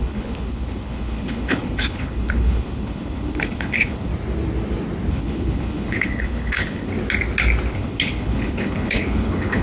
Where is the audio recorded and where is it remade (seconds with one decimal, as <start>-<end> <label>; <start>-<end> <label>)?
0.0-4.1 remade; 4.1-5.1 recorded; 5.1-6.9 remade; 6.9-7.7 recorded; 7.7-9.6 remade